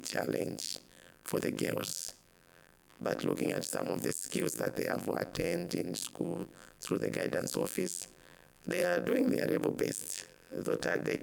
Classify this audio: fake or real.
fake